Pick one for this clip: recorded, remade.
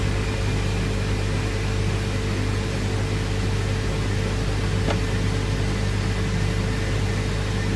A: recorded